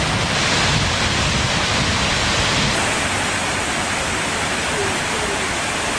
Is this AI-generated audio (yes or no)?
no